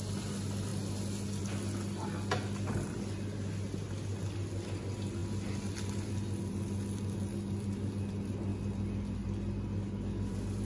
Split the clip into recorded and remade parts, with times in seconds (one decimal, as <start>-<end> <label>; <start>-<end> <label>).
0.0-10.6 recorded